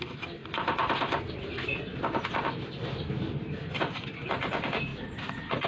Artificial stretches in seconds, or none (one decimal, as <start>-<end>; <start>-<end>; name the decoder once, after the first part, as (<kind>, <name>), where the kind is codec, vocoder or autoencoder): none